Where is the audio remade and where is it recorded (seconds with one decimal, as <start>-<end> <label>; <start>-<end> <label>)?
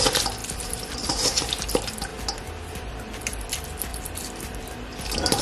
0.0-2.1 remade; 2.1-2.9 recorded; 2.9-5.4 remade